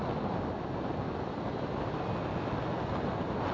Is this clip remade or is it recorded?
recorded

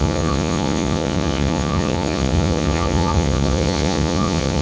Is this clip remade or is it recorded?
remade